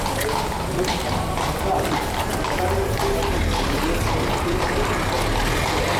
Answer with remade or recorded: recorded